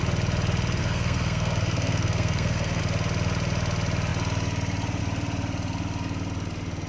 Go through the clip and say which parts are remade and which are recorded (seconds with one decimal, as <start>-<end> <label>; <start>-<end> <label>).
0.0-0.8 recorded; 0.8-2.8 remade; 2.8-6.9 recorded